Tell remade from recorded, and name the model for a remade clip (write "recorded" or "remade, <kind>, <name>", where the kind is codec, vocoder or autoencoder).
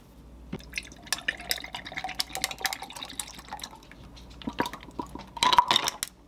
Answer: recorded